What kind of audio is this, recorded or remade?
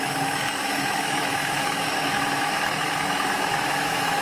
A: remade